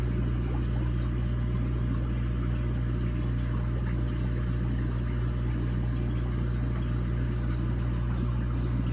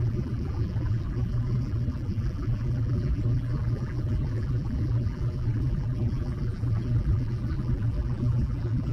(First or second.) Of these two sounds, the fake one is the second